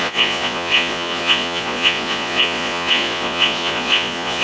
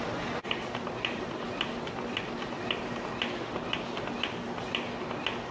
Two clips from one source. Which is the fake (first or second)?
first